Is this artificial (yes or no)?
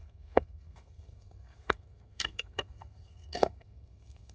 yes